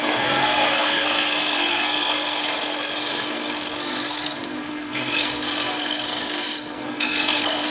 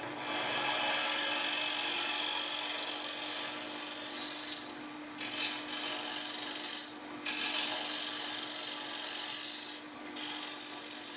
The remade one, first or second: first